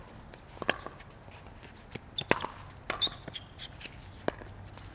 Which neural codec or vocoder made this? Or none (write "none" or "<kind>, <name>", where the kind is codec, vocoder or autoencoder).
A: none